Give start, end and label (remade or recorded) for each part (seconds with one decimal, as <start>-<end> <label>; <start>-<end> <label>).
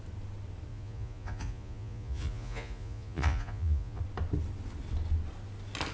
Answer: 0.0-0.7 recorded; 0.7-4.0 remade; 4.0-5.9 recorded